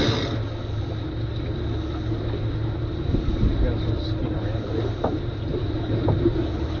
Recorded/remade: recorded